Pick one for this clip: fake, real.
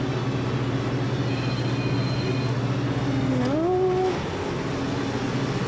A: real